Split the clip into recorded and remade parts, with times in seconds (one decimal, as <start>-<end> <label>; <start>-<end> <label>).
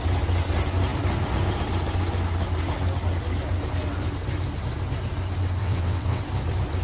0.0-5.6 recorded; 5.6-6.2 remade; 6.2-6.8 recorded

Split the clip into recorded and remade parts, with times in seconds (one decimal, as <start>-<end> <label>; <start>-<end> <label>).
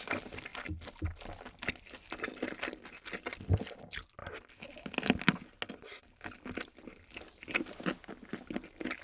0.0-9.0 recorded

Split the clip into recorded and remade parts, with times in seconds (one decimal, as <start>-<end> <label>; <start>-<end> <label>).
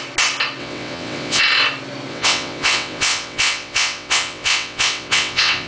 0.0-0.6 recorded; 0.6-1.4 remade; 1.4-2.1 recorded; 2.1-5.7 remade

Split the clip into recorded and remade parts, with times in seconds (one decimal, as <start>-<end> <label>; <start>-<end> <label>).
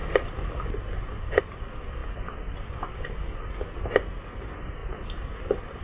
0.0-5.8 recorded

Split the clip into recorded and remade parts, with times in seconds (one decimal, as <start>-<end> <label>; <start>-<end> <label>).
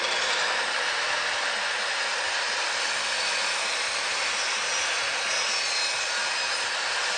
0.0-7.2 recorded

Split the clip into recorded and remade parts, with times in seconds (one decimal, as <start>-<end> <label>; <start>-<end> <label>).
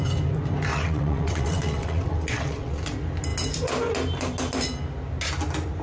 0.0-0.7 recorded; 0.7-2.8 remade; 2.8-5.8 recorded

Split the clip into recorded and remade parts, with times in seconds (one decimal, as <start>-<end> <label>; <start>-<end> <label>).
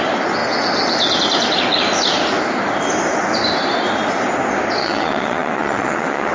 0.0-4.8 recorded; 4.8-6.3 remade